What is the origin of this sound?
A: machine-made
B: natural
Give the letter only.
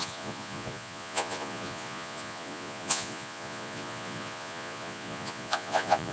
A